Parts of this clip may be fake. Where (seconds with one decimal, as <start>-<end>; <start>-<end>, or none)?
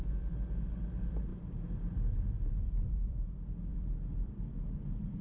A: 0.0-1.3; 2.7-5.2